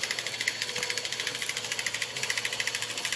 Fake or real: real